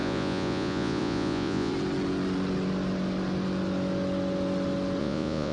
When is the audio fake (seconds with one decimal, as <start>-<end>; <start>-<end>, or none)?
0.0-1.7; 5.0-5.5